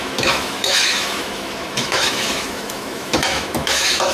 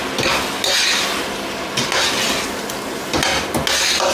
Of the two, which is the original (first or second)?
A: second